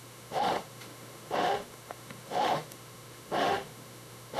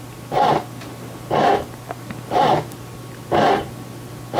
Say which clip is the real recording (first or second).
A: second